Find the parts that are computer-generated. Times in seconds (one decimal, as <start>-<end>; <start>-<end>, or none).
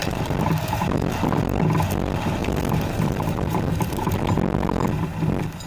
0.0-1.1; 2.4-4.1